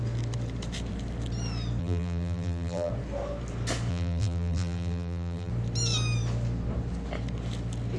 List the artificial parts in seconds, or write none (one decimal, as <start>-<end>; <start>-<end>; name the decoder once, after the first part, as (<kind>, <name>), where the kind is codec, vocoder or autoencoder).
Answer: 1.8-2.9 (vocoder, BigVGAN v2); 3.9-5.5